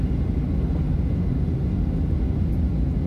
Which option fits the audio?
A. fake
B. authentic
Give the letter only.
B